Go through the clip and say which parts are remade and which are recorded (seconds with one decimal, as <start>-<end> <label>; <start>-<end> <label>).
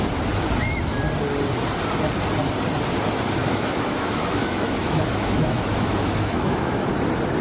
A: 0.0-3.4 recorded; 3.4-6.9 remade; 6.9-7.4 recorded